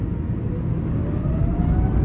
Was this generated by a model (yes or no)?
no